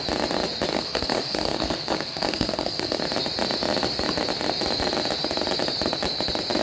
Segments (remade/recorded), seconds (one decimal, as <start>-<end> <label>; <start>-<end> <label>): 0.0-0.7 recorded; 0.7-3.0 remade; 3.0-6.6 recorded